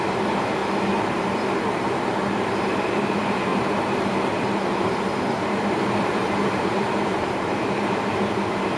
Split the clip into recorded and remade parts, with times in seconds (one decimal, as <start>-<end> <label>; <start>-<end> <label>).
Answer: 0.0-0.6 remade; 0.6-1.1 recorded; 1.1-8.8 remade